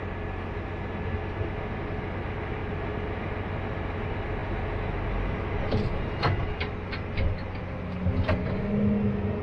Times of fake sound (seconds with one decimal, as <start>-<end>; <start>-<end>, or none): none

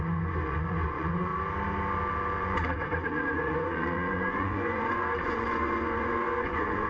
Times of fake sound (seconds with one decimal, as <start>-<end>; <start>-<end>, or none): 0.0-1.3; 2.4-6.9

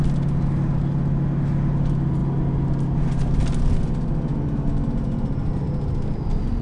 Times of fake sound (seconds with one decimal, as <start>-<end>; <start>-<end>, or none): none

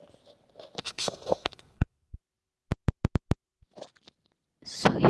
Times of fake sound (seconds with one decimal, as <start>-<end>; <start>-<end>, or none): 0.8-2.2

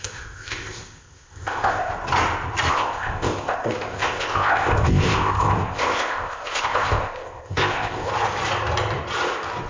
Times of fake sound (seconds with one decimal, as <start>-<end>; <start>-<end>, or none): 0.0-1.9; 2.7-8.1

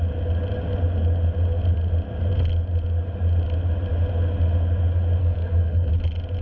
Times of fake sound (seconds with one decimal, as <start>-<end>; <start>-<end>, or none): 5.2-5.9

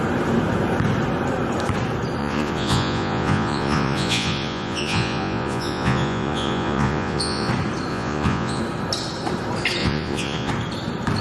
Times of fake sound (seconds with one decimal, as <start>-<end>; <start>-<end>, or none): 2.2-7.5; 7.9-8.6; 9.8-10.5

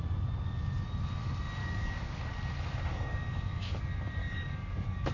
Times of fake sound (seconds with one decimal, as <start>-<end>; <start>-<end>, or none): 1.6-2.2; 2.9-3.8; 4.2-5.1